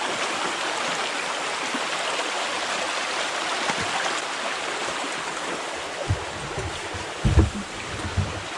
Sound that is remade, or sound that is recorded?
recorded